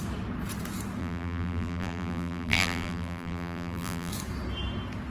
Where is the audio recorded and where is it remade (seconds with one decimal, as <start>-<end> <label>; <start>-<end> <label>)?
0.0-1.0 recorded; 1.0-4.1 remade; 4.1-5.1 recorded

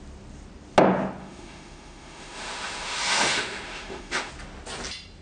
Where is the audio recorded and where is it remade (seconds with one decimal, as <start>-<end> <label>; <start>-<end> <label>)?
0.0-1.2 recorded; 1.2-4.3 remade; 4.3-5.2 recorded

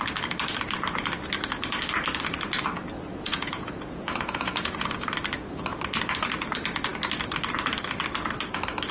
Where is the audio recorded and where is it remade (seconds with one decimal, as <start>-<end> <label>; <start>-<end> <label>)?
0.0-3.1 recorded; 3.1-5.1 remade; 5.1-8.9 recorded

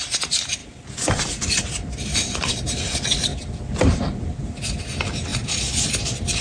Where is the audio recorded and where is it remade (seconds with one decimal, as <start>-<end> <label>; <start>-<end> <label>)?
0.0-6.4 recorded

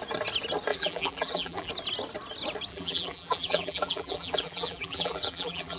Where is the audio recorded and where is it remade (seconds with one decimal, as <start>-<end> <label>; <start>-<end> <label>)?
0.0-0.7 recorded; 0.7-1.7 remade; 1.7-2.7 recorded; 2.7-5.8 remade

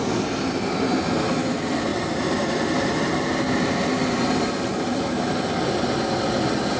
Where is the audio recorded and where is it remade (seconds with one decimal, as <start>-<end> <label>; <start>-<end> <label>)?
0.0-1.9 recorded; 1.9-2.6 remade; 2.6-6.8 recorded

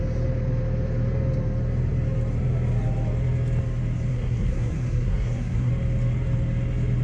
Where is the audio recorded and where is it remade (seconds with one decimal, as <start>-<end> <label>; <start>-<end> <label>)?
0.0-4.1 recorded; 4.1-5.7 remade; 5.7-7.0 recorded

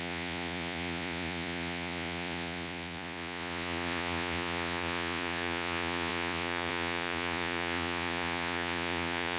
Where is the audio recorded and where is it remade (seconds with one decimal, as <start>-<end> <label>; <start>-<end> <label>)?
0.0-9.4 remade